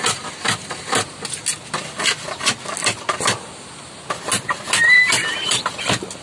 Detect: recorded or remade recorded